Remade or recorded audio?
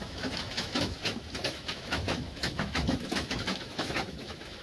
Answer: remade